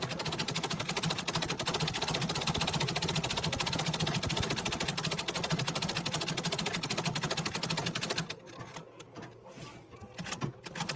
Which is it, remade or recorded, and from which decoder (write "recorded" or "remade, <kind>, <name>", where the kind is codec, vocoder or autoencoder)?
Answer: recorded